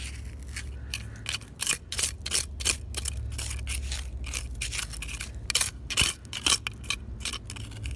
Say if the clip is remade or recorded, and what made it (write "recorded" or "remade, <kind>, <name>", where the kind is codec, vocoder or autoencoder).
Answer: recorded